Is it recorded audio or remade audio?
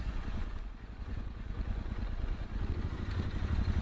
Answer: remade